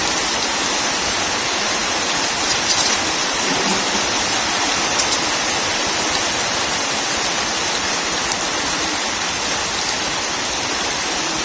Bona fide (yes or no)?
yes